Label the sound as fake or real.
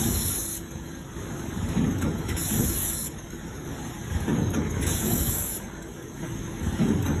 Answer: fake